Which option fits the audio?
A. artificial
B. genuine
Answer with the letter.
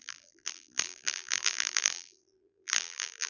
A